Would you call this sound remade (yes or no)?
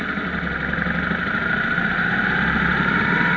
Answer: no